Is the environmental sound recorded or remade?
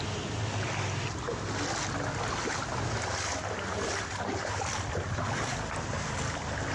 recorded